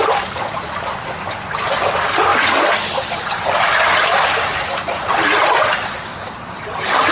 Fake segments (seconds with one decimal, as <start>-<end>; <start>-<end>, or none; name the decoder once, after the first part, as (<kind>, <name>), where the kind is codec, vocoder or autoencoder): none